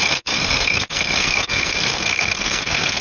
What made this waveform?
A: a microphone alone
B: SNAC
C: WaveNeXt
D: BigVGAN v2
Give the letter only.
B